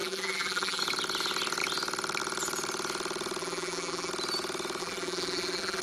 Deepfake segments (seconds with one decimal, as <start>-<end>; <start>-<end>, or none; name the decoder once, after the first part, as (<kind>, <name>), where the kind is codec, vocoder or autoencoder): 0.0-0.8 (vocoder, BigVGAN v2); 3.4-4.1; 4.8-5.8